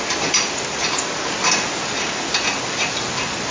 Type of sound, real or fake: real